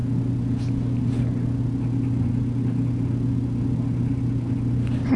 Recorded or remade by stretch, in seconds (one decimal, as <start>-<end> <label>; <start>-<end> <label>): 0.0-5.2 recorded